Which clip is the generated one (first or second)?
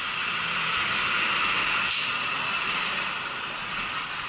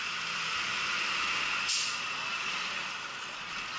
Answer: first